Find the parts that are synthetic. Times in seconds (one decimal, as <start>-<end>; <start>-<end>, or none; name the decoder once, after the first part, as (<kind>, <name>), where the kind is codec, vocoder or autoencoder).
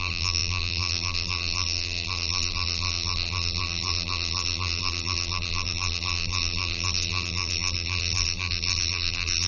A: 0.0-9.5 (vocoder, BigVGAN v2)